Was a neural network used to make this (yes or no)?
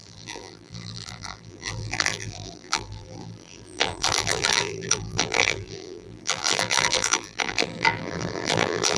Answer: yes